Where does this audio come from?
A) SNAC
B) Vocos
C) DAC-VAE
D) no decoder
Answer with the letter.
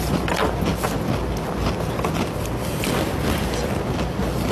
D